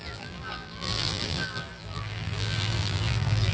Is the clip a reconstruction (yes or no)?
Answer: yes